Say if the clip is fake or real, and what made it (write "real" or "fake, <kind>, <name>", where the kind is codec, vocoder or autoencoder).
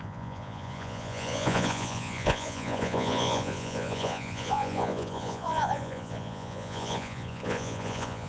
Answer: fake, vocoder, Vocos